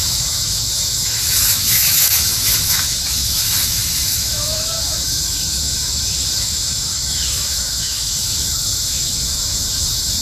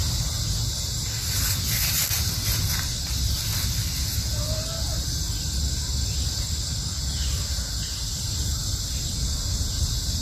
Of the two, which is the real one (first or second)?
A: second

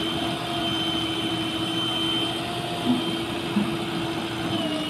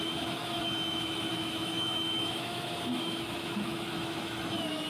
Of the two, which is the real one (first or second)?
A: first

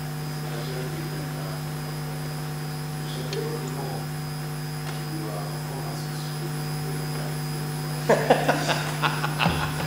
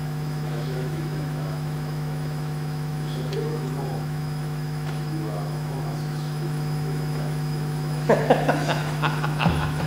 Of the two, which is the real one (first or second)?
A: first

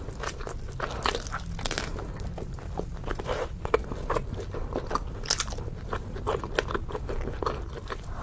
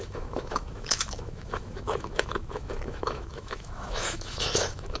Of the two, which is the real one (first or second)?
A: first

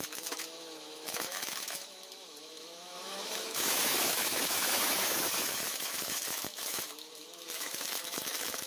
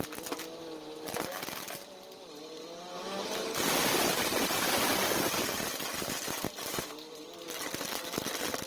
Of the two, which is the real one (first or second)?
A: second